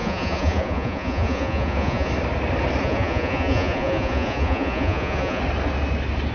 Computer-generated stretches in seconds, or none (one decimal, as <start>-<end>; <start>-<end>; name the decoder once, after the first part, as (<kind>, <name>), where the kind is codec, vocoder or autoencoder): 0.0-2.1 (vocoder, Vocos); 2.8-5.4